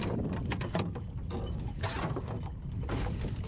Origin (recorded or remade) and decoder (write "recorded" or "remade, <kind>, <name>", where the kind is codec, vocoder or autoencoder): recorded